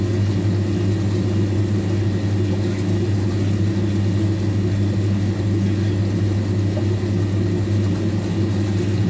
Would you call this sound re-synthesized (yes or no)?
no